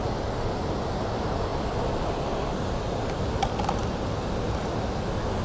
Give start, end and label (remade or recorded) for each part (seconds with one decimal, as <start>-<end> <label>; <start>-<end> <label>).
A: 0.0-5.4 recorded